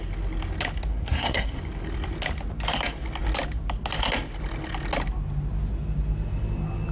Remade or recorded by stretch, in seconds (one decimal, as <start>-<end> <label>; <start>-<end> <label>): 0.0-0.9 recorded; 0.9-1.6 remade; 1.6-6.9 recorded